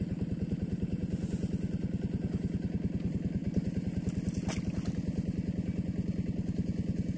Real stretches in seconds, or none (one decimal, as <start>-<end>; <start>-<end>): 0.0-7.2